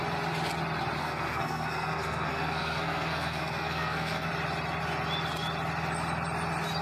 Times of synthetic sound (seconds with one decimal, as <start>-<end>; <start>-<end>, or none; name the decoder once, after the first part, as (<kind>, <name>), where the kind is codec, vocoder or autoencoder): 1.0-4.3 (codec, SNAC)